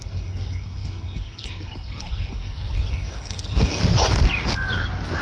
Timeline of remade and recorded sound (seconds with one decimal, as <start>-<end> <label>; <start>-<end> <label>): 0.0-3.8 remade; 3.8-5.2 recorded